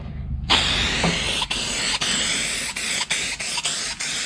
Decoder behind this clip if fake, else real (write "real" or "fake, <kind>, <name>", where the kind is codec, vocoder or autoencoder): real